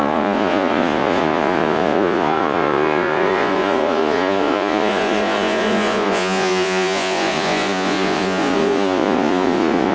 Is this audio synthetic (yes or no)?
yes